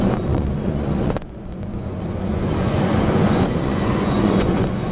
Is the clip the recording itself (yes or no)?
no